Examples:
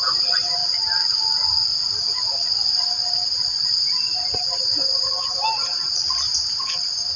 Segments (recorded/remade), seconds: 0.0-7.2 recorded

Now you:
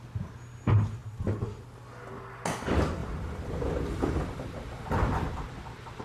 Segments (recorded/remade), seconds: 0.0-3.0 recorded; 3.0-6.0 remade

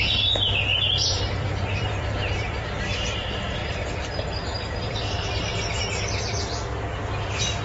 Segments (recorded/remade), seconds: 0.0-0.7 recorded; 0.7-3.2 remade; 3.2-3.6 recorded; 3.6-4.3 remade; 4.3-7.6 recorded

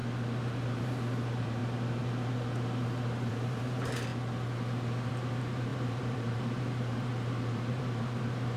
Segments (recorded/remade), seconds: 0.0-0.8 recorded; 0.8-1.6 remade; 1.6-3.3 recorded; 3.3-4.1 remade; 4.1-5.1 recorded; 5.1-8.6 remade